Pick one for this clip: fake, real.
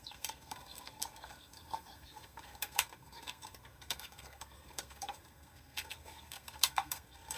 fake